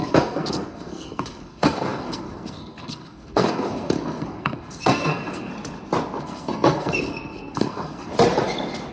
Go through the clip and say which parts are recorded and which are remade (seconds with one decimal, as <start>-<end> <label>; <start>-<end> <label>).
0.0-5.5 remade; 5.5-6.2 recorded; 6.2-8.1 remade; 8.1-8.9 recorded